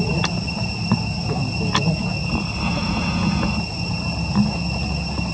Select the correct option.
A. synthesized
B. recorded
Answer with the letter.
B